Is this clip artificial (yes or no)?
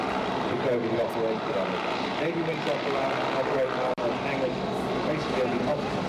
no